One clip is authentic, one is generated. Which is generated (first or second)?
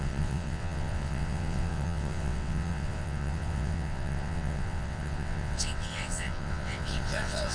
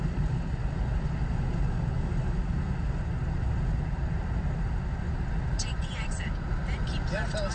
first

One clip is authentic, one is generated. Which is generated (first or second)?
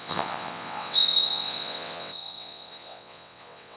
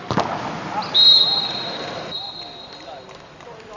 first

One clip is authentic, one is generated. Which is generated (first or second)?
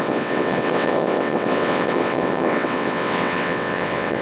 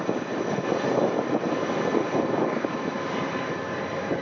first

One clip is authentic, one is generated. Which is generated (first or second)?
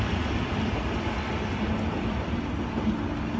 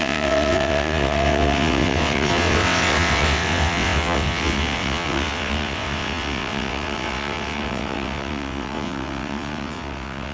second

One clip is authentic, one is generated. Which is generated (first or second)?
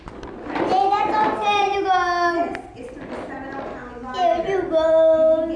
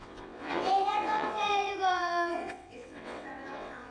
second